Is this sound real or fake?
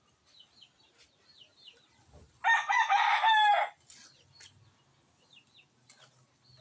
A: real